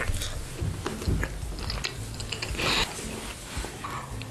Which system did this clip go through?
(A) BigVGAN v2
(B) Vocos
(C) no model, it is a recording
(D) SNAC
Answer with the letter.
C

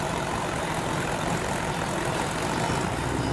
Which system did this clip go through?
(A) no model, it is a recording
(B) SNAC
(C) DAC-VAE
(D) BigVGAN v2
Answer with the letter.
D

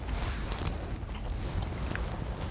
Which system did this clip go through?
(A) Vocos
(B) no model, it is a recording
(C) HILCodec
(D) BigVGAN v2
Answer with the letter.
B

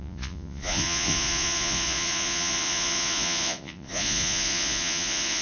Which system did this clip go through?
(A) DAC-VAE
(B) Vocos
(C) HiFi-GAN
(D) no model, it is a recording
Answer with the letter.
B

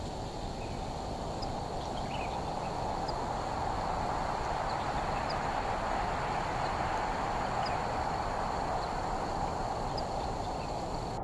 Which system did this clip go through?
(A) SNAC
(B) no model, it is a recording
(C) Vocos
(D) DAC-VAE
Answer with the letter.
B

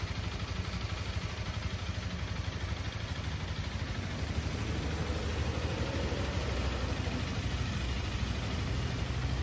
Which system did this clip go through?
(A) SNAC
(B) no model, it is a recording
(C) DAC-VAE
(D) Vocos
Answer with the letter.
B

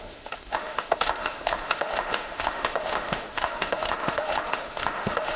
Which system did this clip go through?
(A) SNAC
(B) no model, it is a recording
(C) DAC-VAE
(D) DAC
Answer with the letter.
C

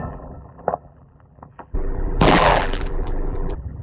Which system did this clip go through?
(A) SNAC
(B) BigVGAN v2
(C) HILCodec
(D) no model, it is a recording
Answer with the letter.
B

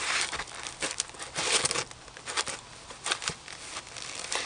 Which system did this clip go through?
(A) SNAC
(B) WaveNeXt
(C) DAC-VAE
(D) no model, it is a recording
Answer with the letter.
D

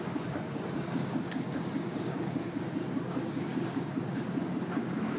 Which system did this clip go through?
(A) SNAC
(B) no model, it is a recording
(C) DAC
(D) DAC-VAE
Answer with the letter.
C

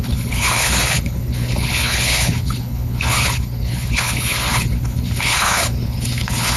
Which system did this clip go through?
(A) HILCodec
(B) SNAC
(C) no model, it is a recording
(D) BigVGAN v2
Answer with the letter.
A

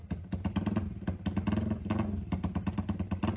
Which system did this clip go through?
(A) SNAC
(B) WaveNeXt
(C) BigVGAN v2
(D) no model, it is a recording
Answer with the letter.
D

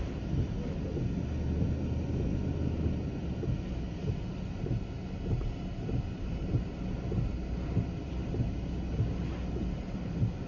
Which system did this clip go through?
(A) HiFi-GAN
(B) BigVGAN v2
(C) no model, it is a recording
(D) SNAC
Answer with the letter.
C